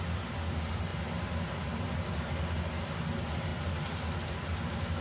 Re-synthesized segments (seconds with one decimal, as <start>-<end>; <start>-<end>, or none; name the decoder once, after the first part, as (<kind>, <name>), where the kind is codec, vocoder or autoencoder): none